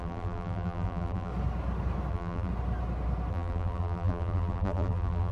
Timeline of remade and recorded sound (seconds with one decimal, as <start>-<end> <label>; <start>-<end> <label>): 0.0-1.3 remade; 1.3-2.1 recorded; 2.1-2.5 remade; 2.5-3.3 recorded; 3.3-5.3 remade